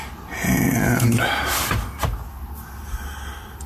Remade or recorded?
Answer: recorded